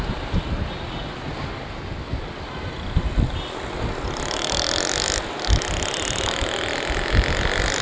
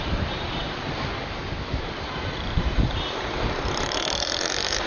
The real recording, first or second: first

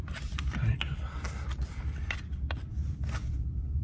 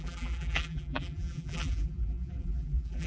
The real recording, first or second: first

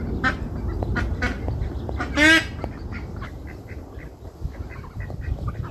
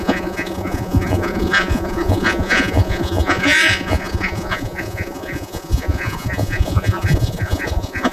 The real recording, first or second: first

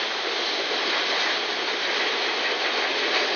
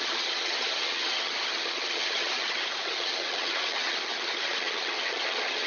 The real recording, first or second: first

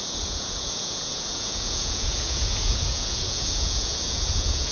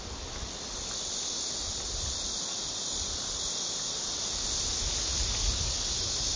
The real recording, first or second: second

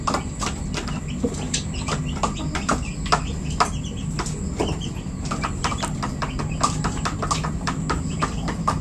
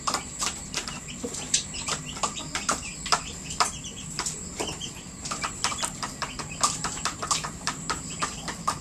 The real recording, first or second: first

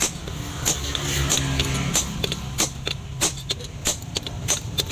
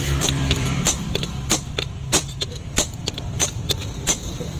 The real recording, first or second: first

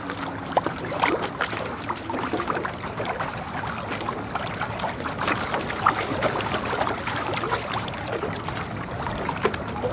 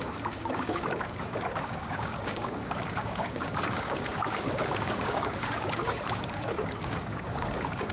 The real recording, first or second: first